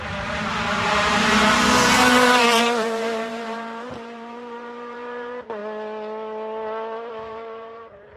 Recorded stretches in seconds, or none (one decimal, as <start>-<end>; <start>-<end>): 5.6-7.1